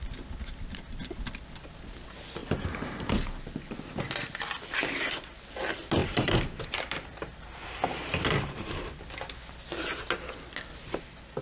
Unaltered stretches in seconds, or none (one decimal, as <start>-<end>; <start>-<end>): 0.0-2.4; 3.4-6.0; 9.3-11.4